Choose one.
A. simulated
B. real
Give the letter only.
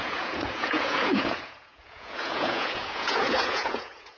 A